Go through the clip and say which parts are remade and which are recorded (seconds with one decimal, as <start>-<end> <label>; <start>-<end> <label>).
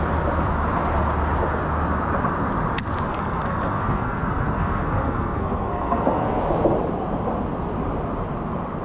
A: 0.0-3.1 recorded; 3.1-6.4 remade; 6.4-8.8 recorded